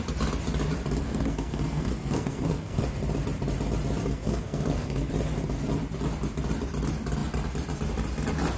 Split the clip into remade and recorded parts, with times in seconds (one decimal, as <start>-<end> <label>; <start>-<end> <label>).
0.0-1.0 recorded; 1.0-2.8 remade; 2.8-4.0 recorded; 4.0-5.1 remade; 5.1-8.6 recorded